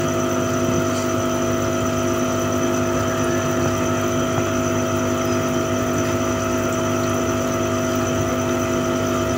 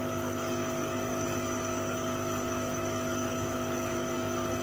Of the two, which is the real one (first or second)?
first